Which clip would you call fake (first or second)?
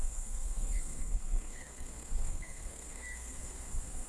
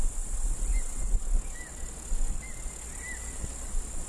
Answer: first